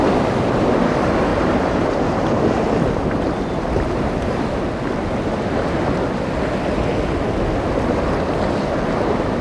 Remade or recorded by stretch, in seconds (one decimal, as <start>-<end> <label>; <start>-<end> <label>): 0.0-1.3 recorded; 1.3-4.6 remade; 4.6-9.4 recorded